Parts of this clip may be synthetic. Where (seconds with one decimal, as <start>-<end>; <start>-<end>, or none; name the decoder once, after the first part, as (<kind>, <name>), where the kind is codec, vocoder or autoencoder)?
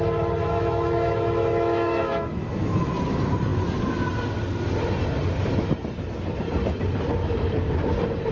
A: 0.4-2.9 (autoencoder, DAC-VAE)